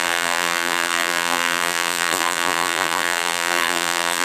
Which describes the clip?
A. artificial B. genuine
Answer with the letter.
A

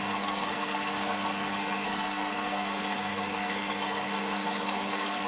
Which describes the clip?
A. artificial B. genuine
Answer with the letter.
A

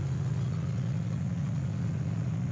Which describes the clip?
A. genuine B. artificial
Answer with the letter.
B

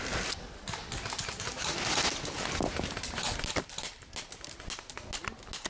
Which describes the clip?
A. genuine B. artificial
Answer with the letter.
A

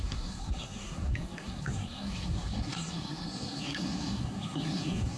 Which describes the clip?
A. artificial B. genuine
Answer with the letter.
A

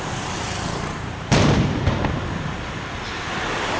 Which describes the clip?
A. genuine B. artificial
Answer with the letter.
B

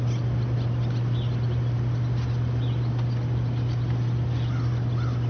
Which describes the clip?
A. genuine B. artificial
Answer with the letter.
A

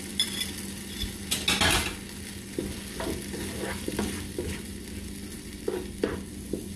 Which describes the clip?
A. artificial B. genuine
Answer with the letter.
B